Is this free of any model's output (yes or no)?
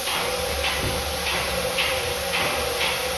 yes